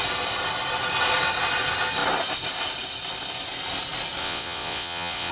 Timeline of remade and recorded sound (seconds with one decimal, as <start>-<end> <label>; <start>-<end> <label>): 0.0-4.2 recorded; 4.2-5.3 remade